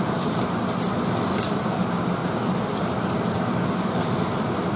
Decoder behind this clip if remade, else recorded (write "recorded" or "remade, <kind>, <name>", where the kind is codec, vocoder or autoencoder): recorded